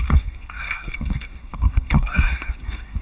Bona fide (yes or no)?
no